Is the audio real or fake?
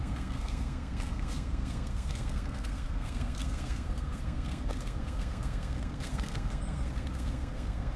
fake